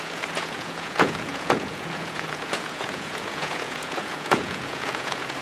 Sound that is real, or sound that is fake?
fake